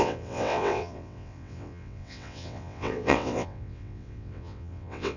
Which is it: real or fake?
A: fake